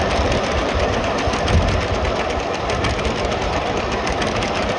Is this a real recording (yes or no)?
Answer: yes